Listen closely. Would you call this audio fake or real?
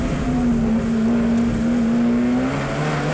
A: real